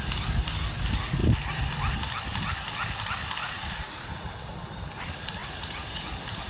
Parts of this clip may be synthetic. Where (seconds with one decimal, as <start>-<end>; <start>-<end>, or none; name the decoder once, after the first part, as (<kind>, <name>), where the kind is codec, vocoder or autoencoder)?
3.4-4.1 (vocoder, Vocos); 5.4-6.1